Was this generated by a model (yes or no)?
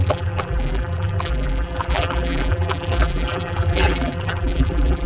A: yes